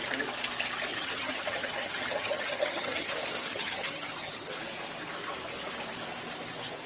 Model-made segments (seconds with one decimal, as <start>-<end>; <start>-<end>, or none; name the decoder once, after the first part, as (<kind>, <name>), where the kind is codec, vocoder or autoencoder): 0.9-3.1 (vocoder, HiFi-GAN); 3.5-4.5